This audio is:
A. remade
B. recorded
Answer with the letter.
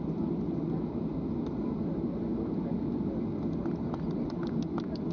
B